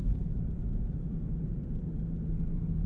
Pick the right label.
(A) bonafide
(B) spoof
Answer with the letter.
B